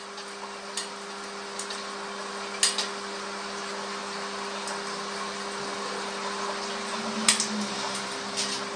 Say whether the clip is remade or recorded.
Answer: recorded